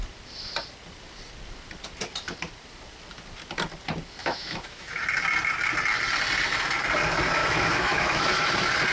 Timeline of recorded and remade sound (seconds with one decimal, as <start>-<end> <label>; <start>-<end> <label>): 0.0-4.2 recorded; 4.2-5.0 remade; 5.0-7.4 recorded; 7.4-8.3 remade; 8.3-8.9 recorded